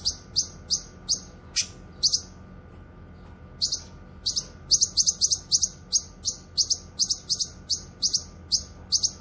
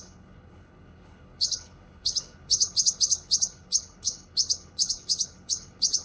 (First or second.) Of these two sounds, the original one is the first